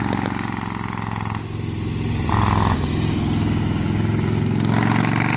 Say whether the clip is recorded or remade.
recorded